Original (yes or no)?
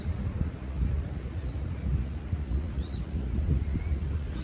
no